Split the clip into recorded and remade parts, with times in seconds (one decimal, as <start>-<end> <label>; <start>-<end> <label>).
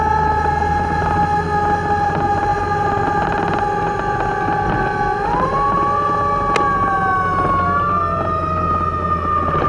0.0-9.7 recorded